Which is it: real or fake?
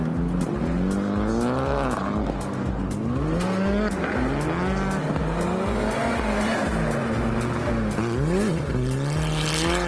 real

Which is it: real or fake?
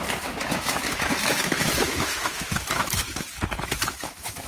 fake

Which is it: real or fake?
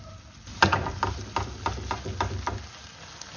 real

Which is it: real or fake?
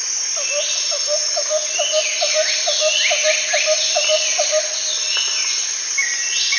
real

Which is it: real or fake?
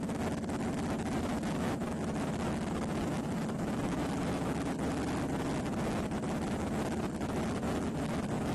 fake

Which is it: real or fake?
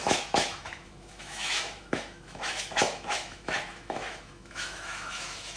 fake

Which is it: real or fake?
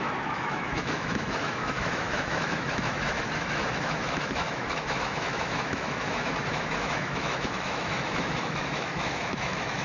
fake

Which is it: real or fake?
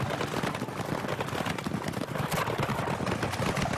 real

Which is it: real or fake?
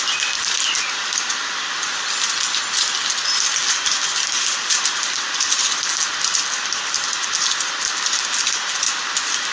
real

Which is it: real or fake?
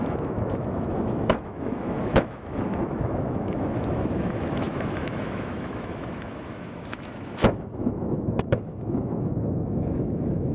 fake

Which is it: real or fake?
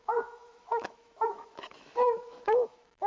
fake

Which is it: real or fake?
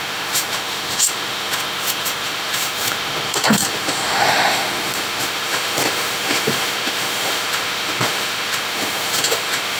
fake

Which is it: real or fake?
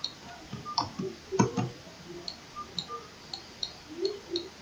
real